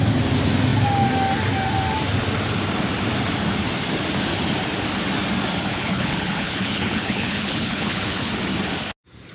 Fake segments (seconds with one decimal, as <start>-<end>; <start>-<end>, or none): 5.7-8.3